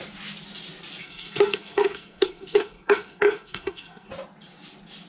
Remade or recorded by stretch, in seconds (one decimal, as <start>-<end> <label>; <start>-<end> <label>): 0.0-1.0 recorded; 1.0-4.1 remade; 4.1-5.1 recorded